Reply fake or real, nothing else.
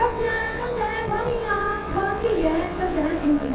fake